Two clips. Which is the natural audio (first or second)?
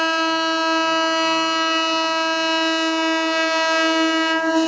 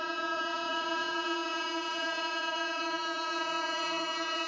first